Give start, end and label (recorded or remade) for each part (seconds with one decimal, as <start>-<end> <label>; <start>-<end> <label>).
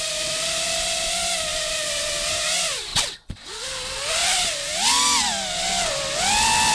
0.0-2.9 recorded; 2.9-3.5 remade; 3.5-6.7 recorded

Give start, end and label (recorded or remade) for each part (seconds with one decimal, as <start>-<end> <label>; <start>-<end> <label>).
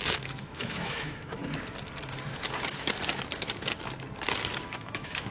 0.0-1.4 remade; 1.4-4.6 recorded; 4.6-5.3 remade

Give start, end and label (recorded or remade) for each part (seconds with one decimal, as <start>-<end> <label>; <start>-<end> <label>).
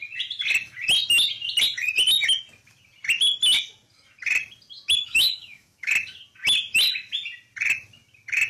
0.0-5.0 recorded; 5.0-5.9 remade; 5.9-8.5 recorded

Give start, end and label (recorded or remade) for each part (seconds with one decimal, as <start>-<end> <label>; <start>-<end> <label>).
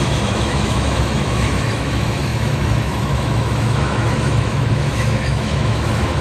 0.0-6.2 remade